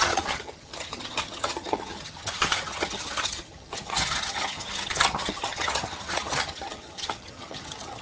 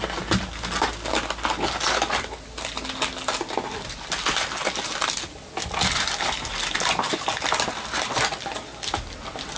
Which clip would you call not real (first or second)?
first